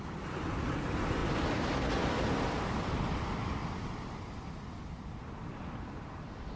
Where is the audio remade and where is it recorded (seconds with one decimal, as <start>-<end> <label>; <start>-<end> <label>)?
0.0-1.2 remade; 1.2-2.2 recorded; 2.2-6.6 remade